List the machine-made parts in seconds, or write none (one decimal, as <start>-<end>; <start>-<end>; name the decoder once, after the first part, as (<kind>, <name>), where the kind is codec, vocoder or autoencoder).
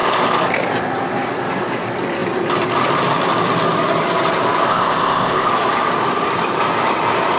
4.7-5.5 (codec, ZipCodec)